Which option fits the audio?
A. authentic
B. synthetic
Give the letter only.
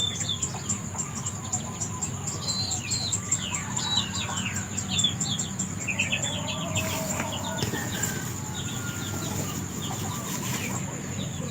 A